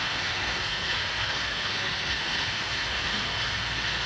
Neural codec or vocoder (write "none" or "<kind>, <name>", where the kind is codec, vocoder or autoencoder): codec, SNAC